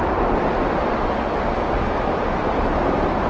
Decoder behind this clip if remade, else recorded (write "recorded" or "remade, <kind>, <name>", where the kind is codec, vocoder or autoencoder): recorded